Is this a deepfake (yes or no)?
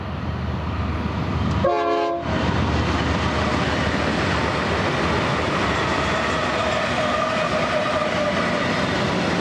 no